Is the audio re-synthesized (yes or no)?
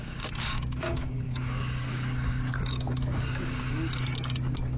yes